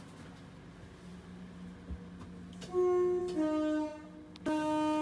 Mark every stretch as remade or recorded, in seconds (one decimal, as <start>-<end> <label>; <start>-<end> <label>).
0.0-5.0 recorded